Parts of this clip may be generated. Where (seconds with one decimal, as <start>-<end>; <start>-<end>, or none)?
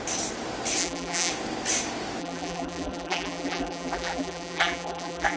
0.8-1.3; 2.2-5.4